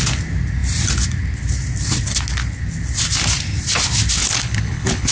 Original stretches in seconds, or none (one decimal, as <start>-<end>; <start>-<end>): 0.0-4.2